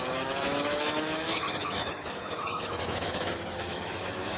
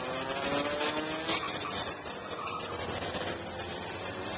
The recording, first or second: second